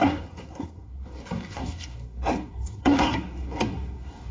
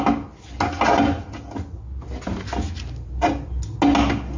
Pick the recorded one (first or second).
second